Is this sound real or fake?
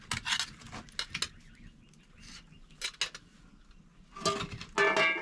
real